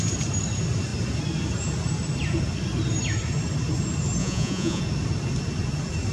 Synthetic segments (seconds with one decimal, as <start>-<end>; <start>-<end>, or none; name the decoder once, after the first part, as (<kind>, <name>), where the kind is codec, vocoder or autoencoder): 4.2-4.8 (vocoder, Vocos)